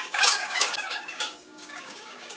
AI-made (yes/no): yes